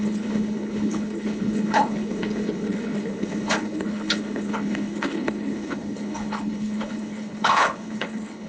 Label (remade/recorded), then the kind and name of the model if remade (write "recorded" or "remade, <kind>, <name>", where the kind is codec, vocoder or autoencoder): remade, codec, HILCodec